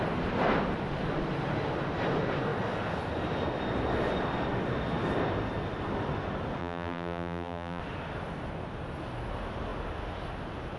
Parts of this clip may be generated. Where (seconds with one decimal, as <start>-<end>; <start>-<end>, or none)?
6.6-7.8